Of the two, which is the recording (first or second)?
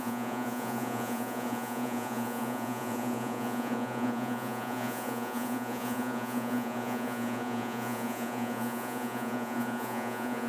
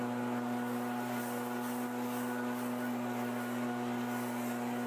second